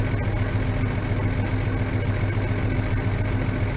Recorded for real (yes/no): yes